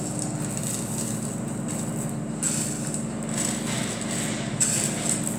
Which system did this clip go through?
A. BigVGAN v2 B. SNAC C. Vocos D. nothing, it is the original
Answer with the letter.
D